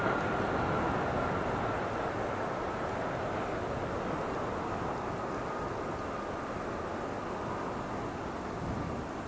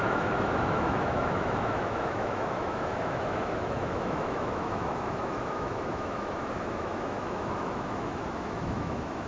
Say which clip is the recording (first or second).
first